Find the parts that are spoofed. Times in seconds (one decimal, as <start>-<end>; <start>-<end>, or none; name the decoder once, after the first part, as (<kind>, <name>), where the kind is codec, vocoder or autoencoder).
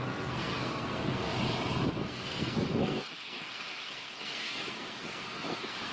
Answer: 0.0-1.3 (codec, SNAC); 1.9-5.9